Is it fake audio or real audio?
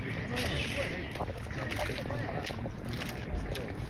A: real